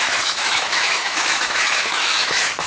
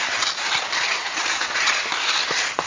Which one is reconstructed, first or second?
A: first